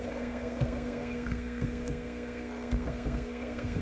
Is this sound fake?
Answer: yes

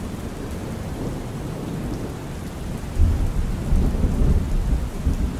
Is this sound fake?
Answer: no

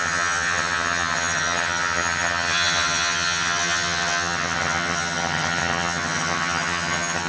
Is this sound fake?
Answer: yes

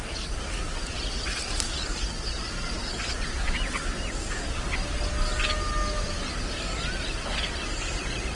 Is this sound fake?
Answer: no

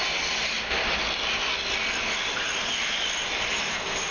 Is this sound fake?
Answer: no